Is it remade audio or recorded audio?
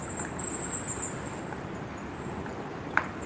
recorded